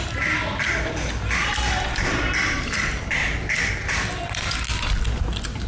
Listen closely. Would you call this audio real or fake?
real